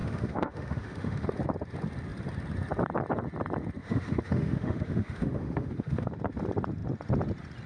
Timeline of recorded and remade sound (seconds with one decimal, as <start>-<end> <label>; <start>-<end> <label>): 0.0-1.3 remade; 1.3-3.8 recorded; 3.8-6.1 remade; 6.1-7.7 recorded